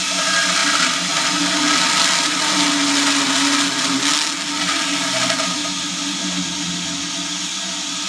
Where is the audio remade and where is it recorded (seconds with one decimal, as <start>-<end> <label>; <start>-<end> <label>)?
0.0-8.1 recorded